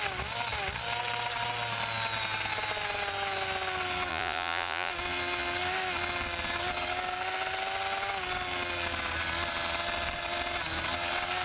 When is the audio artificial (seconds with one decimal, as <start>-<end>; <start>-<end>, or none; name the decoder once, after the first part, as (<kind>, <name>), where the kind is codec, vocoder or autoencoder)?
4.1-4.9 (vocoder, Vocos)